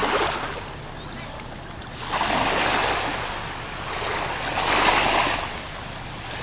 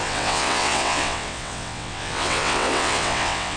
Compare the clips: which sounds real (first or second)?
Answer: first